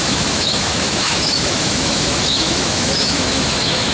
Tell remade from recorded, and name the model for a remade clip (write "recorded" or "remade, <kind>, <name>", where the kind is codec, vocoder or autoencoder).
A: remade, autoencoder, DAC-VAE